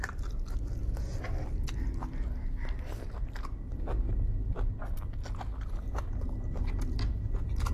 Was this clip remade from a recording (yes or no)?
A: no